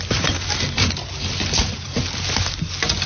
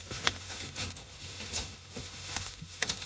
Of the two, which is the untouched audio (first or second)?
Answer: first